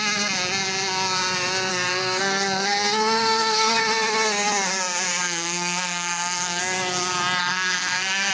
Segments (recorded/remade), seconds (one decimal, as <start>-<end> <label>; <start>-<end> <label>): 0.0-1.7 recorded; 1.7-3.8 remade; 3.8-5.2 recorded; 5.2-6.6 remade; 6.6-7.4 recorded; 7.4-8.3 remade